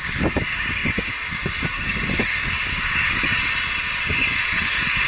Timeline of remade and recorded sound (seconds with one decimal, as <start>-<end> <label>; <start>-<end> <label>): 0.0-3.4 remade; 3.4-4.0 recorded; 4.0-5.1 remade

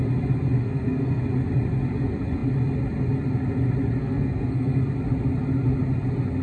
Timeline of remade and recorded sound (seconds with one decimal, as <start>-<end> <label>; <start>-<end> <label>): 0.0-0.6 recorded; 0.6-1.2 remade; 1.2-4.0 recorded; 4.0-4.8 remade; 4.8-6.4 recorded

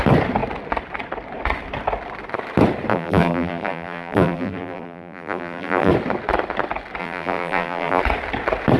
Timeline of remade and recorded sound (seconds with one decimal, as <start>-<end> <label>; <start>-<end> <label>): 0.0-2.9 recorded; 2.9-5.9 remade; 5.9-7.0 recorded; 7.0-8.0 remade; 8.0-8.8 recorded

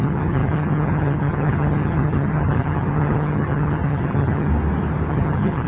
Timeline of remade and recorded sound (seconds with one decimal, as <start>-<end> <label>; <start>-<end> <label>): 0.0-4.5 remade; 4.5-5.1 recorded; 5.1-5.7 remade

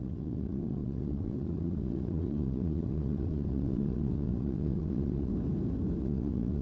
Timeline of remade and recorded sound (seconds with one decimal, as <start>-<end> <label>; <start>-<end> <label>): 0.0-5.3 remade; 5.3-6.0 recorded; 6.0-6.6 remade